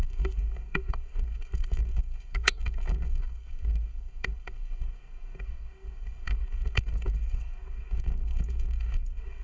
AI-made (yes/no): yes